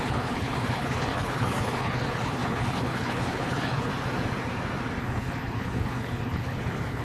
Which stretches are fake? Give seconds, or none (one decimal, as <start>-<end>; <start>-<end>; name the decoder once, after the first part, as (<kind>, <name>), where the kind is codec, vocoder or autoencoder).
0.0-3.9 (codec, HILCodec); 5.0-7.0

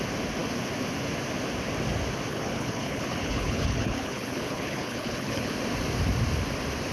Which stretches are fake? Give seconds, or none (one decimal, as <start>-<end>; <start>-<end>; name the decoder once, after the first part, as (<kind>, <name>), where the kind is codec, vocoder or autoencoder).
2.3-5.5 (codec, HILCodec)

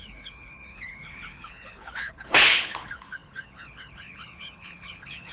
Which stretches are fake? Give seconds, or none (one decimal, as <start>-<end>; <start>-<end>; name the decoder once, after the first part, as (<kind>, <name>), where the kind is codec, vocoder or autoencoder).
0.0-5.3 (codec, HILCodec)

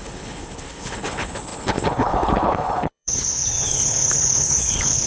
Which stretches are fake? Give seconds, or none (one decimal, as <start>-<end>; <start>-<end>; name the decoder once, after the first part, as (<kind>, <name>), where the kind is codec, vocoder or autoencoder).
0.0-5.1 (codec, HILCodec)

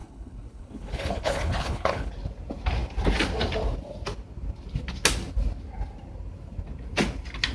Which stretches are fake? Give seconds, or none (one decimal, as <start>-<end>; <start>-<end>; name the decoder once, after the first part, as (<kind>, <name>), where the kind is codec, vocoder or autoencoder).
0.0-2.1 (codec, HILCodec)

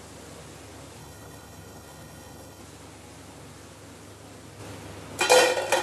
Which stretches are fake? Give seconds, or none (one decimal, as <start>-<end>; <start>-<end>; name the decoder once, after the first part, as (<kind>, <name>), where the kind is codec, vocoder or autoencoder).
1.0-2.6 (codec, HILCodec)